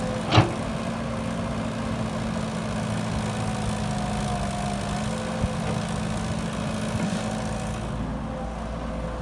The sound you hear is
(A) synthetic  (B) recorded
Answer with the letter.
B